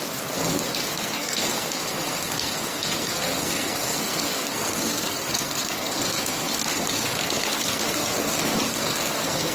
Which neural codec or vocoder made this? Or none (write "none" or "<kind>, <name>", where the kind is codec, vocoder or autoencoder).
codec, SNAC